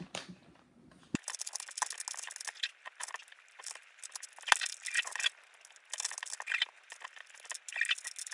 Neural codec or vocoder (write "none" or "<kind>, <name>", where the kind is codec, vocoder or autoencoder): none